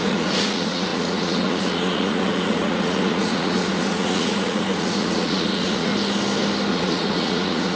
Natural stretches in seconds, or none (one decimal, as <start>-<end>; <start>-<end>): 5.9-6.7